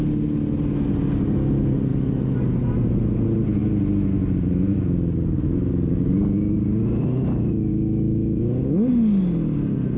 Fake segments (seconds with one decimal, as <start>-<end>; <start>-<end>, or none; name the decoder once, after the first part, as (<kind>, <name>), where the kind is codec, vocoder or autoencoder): 7.7-8.9 (autoencoder, DAC-VAE)